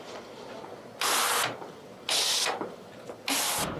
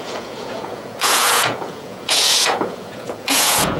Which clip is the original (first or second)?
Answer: first